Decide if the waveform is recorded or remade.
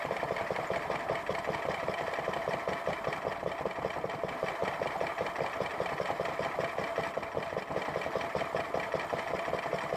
recorded